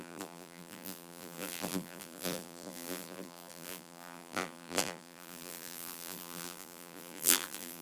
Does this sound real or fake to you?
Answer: fake